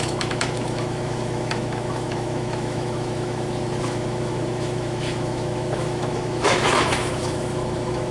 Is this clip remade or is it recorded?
remade